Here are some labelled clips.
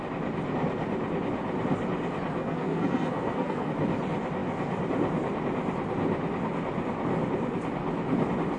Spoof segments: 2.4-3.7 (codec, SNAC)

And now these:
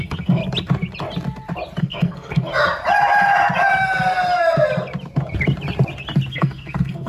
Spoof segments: 0.0-0.4 (codec, SNAC); 1.8-2.5; 6.3-7.1

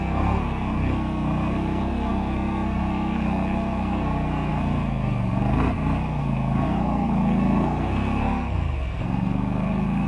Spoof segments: 0.0-10.1 (codec, SNAC)

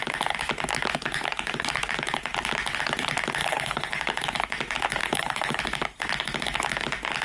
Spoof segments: 3.4-4.0 (codec, HILCodec); 5.0-5.6

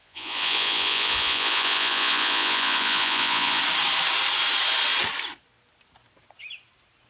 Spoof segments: 0.0-3.6 (vocoder, Vocos)